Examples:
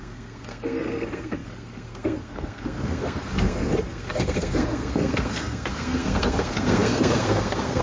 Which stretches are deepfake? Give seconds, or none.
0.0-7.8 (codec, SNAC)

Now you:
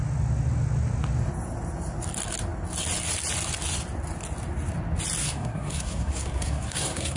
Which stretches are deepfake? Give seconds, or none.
5.2-7.2 (codec, SNAC)

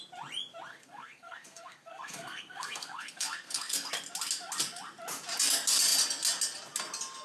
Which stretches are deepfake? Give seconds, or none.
0.7-3.9 (codec, SNAC)

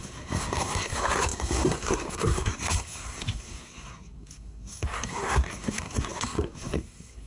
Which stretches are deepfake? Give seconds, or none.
0.0-7.3 (codec, SNAC)

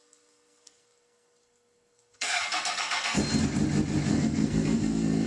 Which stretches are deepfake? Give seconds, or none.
0.0-3.2 (codec, SNAC); 4.1-5.3

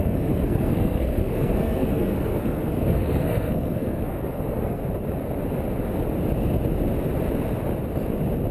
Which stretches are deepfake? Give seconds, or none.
0.0-4.8 (codec, SNAC)

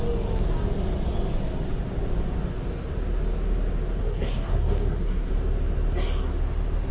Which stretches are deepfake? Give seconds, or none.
4.0-5.3 (codec, SNAC)